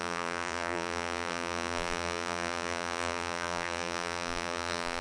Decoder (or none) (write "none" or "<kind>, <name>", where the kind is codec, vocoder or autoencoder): vocoder, BigVGAN v2